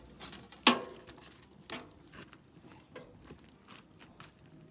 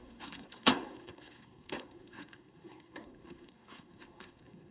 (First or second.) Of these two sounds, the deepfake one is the second